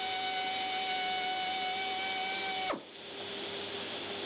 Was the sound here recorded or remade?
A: recorded